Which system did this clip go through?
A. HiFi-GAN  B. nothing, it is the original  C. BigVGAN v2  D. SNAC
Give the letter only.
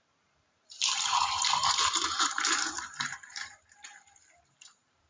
C